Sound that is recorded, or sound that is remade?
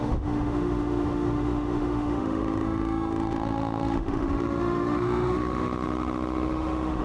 remade